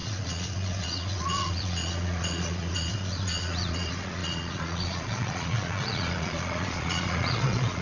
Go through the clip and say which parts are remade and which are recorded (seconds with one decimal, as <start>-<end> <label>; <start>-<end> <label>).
0.0-7.8 remade